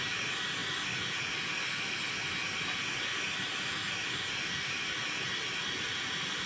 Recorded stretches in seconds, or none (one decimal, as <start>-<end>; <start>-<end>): 0.0-6.5